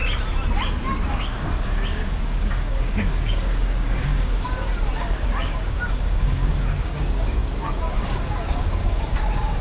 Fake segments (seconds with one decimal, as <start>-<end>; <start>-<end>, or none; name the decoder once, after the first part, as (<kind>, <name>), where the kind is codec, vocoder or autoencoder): 1.1-9.6 (codec, DAC)